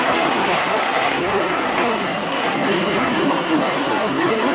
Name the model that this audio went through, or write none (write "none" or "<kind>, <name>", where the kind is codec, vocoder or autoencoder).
codec, SNAC